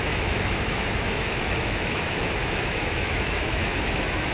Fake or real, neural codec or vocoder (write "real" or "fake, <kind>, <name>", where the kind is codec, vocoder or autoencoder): fake, autoencoder, DAC-VAE